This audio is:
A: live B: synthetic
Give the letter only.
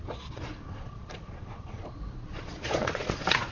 B